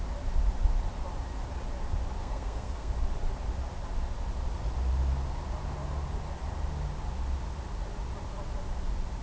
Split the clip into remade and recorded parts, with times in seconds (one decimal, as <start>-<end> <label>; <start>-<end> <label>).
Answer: 0.0-2.2 recorded; 2.2-2.9 remade; 2.9-9.2 recorded